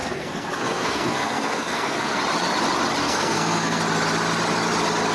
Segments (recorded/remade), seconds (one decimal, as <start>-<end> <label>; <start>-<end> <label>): 0.0-2.2 remade; 2.2-3.0 recorded; 3.0-3.8 remade; 3.8-5.1 recorded

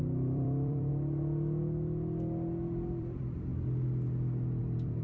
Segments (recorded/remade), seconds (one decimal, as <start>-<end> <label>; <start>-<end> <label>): 0.0-0.9 remade; 0.9-3.0 recorded; 3.0-3.5 remade; 3.5-4.6 recorded; 4.6-5.0 remade

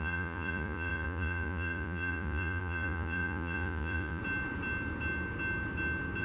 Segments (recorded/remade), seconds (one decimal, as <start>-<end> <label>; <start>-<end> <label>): 0.0-4.2 remade; 4.2-6.2 recorded

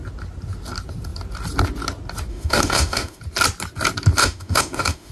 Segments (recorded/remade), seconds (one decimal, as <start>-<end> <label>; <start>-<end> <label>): 0.0-2.3 recorded; 2.3-3.2 remade; 3.2-4.2 recorded; 4.2-5.1 remade

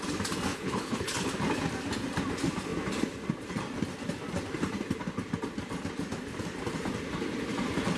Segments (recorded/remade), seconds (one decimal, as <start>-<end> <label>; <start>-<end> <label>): 0.0-0.5 recorded; 0.5-1.3 remade; 1.3-8.0 recorded

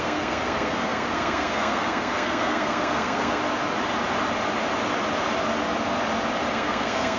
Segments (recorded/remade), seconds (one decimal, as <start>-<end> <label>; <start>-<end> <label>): 0.0-3.4 remade; 3.4-6.5 recorded; 6.5-7.2 remade